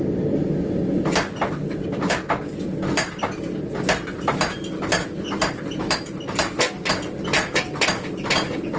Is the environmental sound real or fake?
real